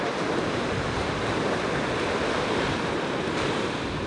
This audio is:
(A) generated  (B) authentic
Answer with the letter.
B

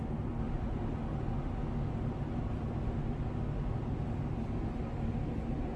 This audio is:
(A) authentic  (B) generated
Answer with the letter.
A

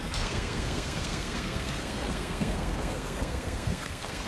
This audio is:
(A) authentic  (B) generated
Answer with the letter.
B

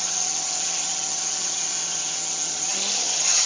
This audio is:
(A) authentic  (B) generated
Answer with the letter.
B